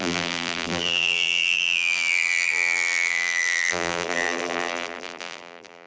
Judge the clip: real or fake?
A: fake